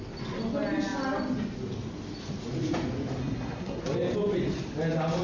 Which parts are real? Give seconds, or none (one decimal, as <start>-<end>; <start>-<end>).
0.0-3.2; 3.8-5.2